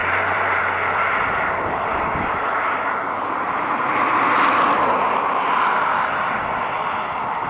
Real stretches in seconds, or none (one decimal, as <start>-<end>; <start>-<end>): 0.6-7.5